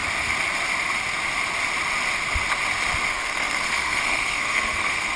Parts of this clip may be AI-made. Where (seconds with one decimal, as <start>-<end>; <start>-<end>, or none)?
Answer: 3.1-5.2